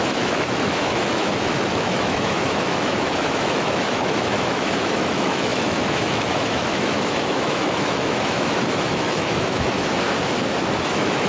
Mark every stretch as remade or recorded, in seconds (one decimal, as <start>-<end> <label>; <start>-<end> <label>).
0.0-9.9 remade; 9.9-10.8 recorded; 10.8-11.3 remade